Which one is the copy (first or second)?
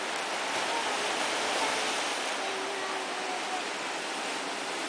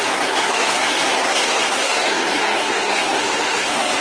second